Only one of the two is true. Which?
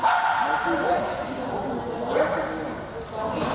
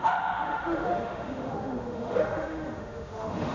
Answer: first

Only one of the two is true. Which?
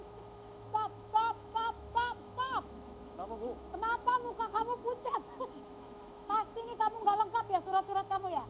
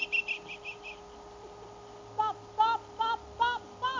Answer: second